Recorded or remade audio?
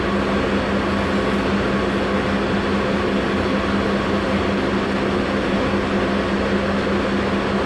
recorded